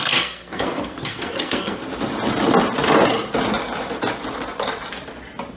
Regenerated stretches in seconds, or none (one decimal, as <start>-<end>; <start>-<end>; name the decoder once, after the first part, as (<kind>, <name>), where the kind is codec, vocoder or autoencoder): 0.0-1.8 (codec, SNAC)